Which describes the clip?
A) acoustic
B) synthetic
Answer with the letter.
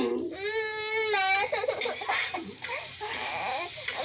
B